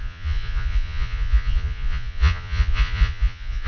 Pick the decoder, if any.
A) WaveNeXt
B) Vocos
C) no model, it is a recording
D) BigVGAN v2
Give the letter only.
B